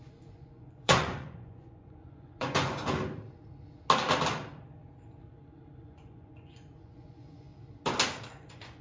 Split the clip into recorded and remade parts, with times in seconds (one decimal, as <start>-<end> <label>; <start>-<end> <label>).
0.0-2.8 remade; 2.8-5.8 recorded; 5.8-7.5 remade; 7.5-8.3 recorded; 8.3-8.8 remade